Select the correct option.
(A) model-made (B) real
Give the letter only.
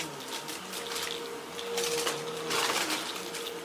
B